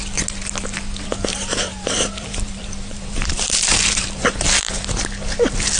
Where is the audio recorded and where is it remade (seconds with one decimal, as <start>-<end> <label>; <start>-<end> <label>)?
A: 0.0-1.3 recorded; 1.3-4.8 remade; 4.8-5.8 recorded